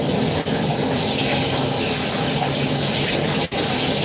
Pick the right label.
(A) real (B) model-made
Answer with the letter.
A